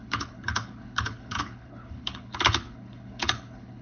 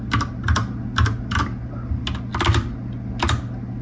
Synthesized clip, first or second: first